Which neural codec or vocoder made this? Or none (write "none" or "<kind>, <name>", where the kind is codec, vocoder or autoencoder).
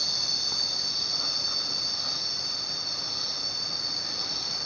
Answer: none